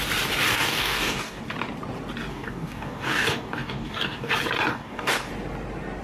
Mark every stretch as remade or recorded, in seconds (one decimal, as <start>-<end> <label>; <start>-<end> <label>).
0.0-0.5 recorded; 0.5-1.4 remade; 1.4-2.3 recorded; 2.3-4.3 remade; 4.3-4.7 recorded; 4.7-5.3 remade; 5.3-6.0 recorded